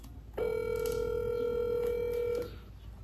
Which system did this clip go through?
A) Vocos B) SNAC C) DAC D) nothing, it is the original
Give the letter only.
D